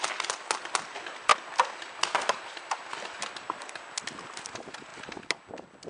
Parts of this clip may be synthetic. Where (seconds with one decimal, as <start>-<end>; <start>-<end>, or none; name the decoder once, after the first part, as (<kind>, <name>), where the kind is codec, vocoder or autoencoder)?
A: none